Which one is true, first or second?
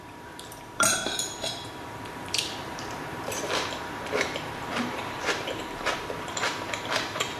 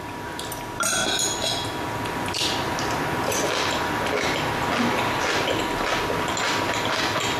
second